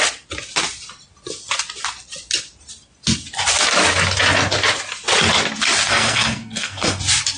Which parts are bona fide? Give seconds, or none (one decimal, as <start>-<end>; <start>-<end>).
0.0-5.9; 7.0-7.4